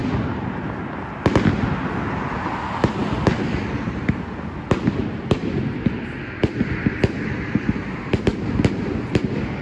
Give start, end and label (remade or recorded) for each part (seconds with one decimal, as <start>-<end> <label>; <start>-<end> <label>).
0.0-9.6 recorded